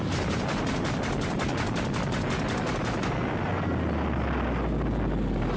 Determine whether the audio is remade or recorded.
recorded